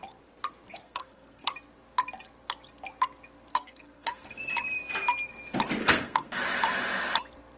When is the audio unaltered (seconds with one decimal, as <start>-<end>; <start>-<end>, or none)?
0.0-0.7; 1.5-3.5; 4.4-5.8; 6.4-7.6